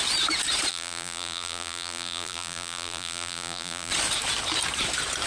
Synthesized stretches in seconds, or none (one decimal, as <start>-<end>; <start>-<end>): 0.7-3.9